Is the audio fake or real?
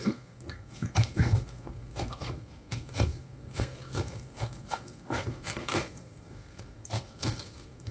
fake